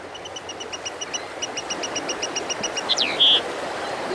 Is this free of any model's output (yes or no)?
yes